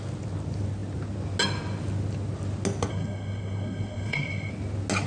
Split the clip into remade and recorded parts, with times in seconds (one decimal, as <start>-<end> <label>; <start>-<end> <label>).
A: 0.0-2.9 recorded; 2.9-4.5 remade; 4.5-5.1 recorded